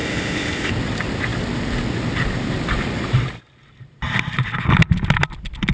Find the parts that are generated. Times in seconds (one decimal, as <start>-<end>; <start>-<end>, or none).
0.0-0.7